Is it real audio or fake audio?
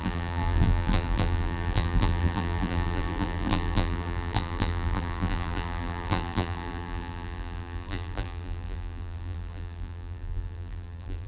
fake